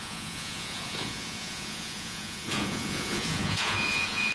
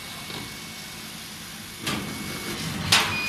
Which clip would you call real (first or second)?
second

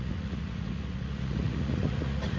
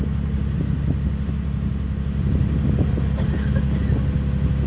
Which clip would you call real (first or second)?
second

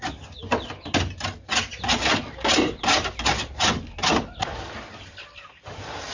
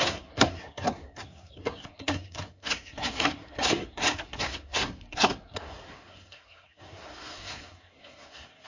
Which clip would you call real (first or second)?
first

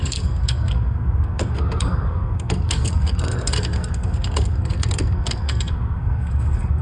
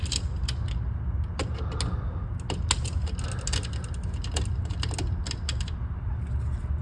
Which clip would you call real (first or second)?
second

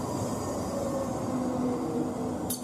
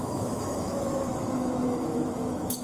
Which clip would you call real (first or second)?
first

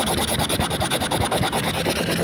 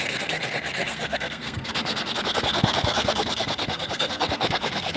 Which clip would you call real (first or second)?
first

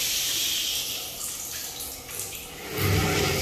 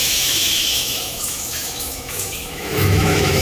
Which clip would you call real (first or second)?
first